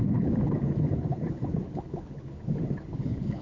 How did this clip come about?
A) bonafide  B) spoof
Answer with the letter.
B